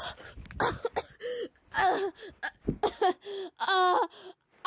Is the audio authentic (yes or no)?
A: yes